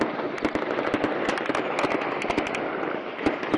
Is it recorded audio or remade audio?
recorded